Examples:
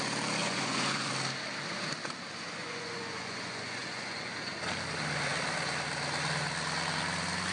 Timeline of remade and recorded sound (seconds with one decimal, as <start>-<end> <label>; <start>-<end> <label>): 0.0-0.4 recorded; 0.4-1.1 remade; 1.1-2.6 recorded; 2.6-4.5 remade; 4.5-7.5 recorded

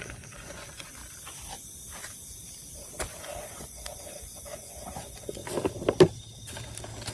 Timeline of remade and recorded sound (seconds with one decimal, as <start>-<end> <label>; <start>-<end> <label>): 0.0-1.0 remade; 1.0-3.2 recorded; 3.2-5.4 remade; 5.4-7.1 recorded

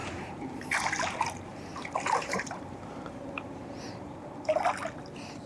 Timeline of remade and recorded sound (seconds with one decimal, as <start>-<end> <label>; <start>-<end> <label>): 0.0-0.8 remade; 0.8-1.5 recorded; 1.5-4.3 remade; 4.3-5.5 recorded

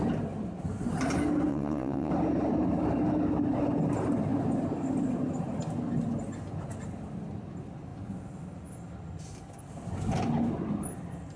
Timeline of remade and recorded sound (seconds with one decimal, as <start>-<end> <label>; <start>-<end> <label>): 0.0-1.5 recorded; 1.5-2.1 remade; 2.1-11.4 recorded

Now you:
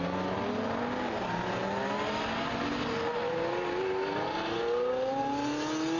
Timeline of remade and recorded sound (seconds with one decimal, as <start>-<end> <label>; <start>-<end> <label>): 0.0-6.0 recorded